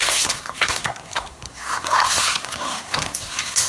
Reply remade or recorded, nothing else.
remade